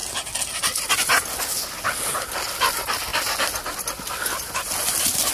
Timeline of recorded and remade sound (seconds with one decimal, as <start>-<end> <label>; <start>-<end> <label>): 0.0-5.3 recorded